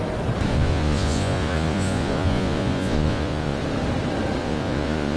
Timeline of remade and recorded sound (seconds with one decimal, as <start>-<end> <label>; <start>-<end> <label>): 0.0-0.5 recorded; 0.5-3.6 remade; 3.6-4.4 recorded; 4.4-5.2 remade